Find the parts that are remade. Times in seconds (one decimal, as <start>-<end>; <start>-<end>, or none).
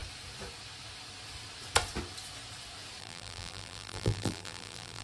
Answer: 3.0-5.0